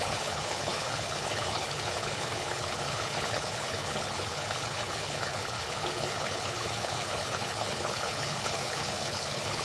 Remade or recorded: remade